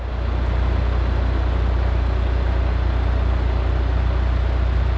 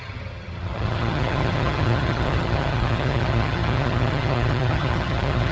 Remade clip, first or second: second